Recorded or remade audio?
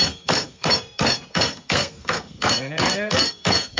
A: remade